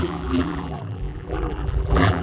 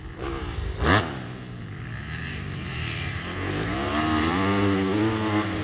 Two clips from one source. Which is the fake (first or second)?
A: first